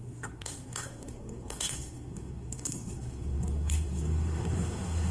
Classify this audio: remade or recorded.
remade